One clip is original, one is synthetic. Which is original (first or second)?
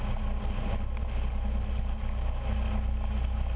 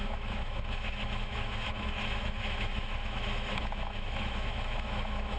first